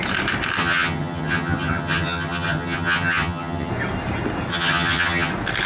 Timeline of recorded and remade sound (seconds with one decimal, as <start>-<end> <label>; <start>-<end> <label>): 0.0-0.6 recorded; 0.6-3.7 remade; 3.7-4.5 recorded; 4.5-5.3 remade; 5.3-5.7 recorded